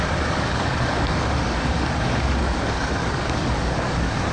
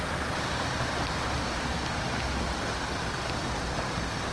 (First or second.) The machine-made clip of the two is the first